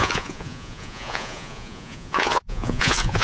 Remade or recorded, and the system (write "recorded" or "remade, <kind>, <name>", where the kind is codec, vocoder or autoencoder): remade, vocoder, Vocos